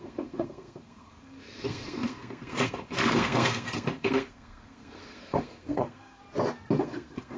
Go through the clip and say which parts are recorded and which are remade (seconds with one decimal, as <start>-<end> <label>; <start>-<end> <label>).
0.0-6.2 remade; 6.2-6.8 recorded; 6.8-7.4 remade